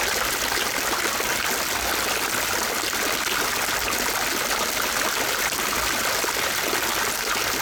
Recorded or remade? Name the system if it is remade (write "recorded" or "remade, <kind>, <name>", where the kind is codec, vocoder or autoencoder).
recorded